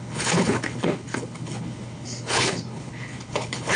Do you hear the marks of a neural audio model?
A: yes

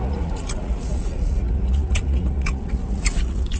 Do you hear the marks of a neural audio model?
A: yes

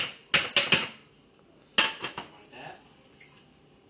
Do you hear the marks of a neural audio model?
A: no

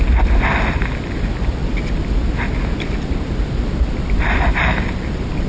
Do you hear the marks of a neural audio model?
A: no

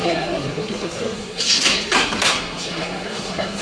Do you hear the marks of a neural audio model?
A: yes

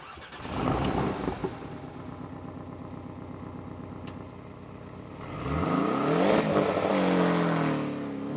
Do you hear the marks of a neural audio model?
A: no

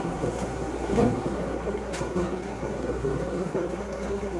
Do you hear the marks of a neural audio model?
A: yes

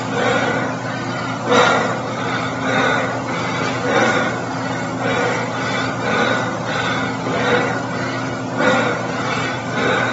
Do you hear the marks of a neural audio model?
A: no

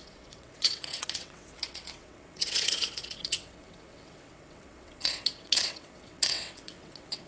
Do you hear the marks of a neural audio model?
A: yes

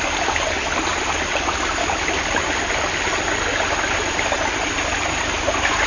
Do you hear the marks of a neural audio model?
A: no